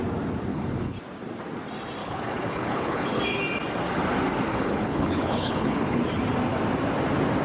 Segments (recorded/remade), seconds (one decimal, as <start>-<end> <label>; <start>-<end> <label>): 0.0-0.5 recorded; 0.5-1.0 remade; 1.0-2.0 recorded; 2.0-3.2 remade; 3.2-4.5 recorded; 4.5-6.0 remade; 6.0-7.4 recorded